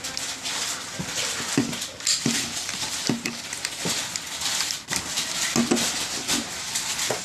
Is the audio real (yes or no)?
yes